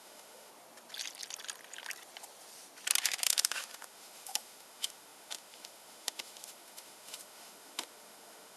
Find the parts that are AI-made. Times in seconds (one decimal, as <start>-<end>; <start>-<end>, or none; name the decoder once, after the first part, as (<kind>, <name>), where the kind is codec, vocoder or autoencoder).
0.0-0.5 (autoencoder, DAC-VAE); 3.0-8.6